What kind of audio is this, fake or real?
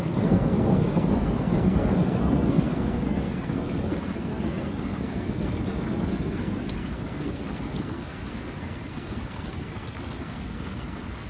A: fake